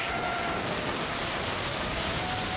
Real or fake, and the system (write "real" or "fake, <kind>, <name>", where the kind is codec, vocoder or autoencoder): real